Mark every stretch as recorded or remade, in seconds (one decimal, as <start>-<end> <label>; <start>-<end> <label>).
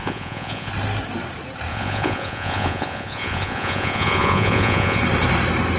0.0-0.7 remade; 0.7-1.7 recorded; 1.7-5.0 remade; 5.0-5.8 recorded